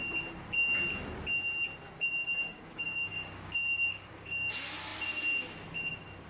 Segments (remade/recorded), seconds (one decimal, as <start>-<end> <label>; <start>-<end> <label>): 0.0-2.2 recorded; 2.2-4.5 remade; 4.5-6.3 recorded